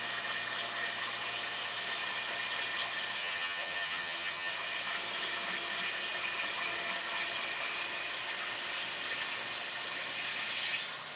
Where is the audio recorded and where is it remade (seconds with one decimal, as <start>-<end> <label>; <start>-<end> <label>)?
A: 0.0-3.2 recorded; 3.2-4.5 remade; 4.5-11.2 recorded